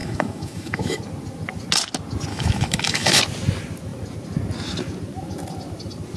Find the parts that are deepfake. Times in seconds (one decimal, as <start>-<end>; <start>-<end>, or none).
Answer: 0.0-1.0; 2.3-3.2